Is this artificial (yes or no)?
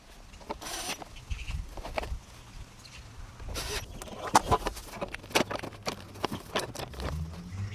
no